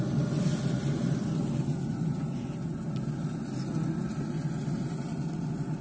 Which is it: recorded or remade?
recorded